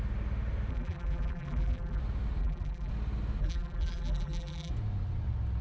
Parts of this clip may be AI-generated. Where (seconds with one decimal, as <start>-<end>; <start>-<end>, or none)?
0.7-2.0; 2.4-2.9; 3.4-4.7